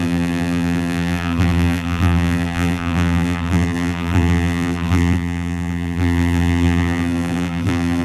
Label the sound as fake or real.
fake